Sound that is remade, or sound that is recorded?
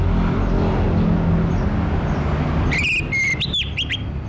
recorded